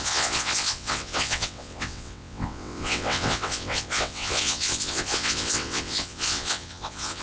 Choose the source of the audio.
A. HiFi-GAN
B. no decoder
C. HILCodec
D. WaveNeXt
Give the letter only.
D